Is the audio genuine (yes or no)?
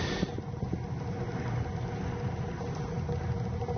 yes